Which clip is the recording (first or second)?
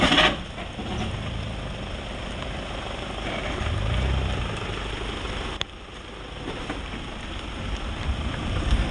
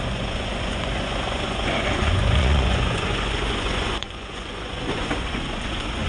first